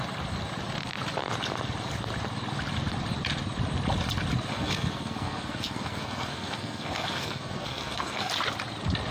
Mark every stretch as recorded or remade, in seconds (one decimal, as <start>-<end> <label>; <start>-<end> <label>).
0.0-4.5 recorded; 4.5-8.3 remade; 8.3-9.1 recorded